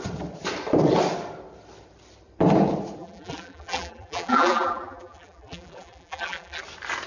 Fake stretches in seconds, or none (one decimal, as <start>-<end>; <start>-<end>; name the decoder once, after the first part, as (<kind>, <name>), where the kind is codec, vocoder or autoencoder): 3.0-6.6 (vocoder, BigVGAN v2)